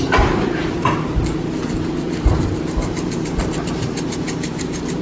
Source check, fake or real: real